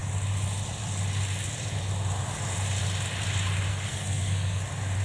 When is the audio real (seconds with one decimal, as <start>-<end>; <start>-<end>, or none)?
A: 0.0-3.7; 4.6-5.0